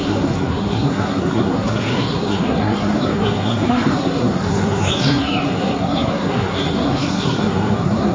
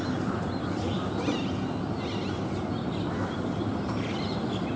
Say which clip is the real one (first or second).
second